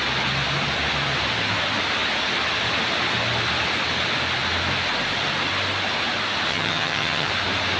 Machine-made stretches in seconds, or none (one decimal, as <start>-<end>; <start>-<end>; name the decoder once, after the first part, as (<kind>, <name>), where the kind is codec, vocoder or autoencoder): 6.5-7.3 (vocoder, HiFi-GAN)